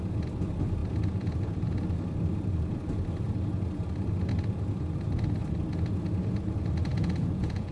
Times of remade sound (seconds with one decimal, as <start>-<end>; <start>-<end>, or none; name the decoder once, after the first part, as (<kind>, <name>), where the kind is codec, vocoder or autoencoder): 6.9-7.7 (vocoder, Vocos)

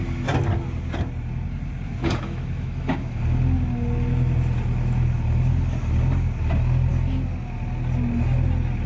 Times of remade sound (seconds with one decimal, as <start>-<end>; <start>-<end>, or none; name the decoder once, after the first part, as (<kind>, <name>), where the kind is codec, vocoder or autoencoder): 2.0-3.2 (autoencoder, DAC-VAE)

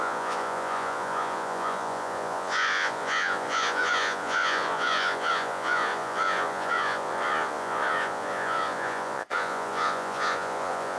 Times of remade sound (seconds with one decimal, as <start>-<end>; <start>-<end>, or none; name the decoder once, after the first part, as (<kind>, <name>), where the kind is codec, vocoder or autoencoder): 0.0-11.0 (vocoder, Vocos)

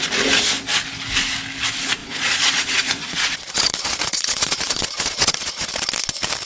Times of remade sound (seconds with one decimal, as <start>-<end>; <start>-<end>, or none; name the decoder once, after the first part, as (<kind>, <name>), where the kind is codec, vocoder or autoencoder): 2.0-5.7 (vocoder, Vocos)

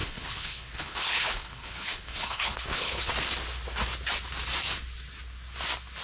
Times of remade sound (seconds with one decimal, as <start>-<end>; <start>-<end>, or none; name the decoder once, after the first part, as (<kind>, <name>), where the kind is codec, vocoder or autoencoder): 0.0-3.1 (codec, HILCodec)

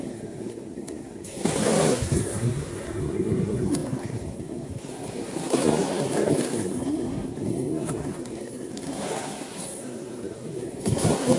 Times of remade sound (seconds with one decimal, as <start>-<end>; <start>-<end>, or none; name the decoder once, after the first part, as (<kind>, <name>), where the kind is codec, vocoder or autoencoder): 0.0-11.4 (codec, SNAC)

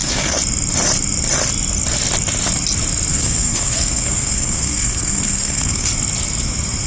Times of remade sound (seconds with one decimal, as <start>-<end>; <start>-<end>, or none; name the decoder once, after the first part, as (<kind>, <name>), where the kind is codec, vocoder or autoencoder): 3.1-5.9 (codec, SNAC)